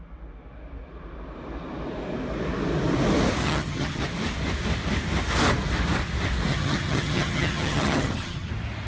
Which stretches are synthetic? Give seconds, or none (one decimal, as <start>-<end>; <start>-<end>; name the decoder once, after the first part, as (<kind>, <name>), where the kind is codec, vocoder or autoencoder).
3.4-4.0 (vocoder, HiFi-GAN); 6.5-8.5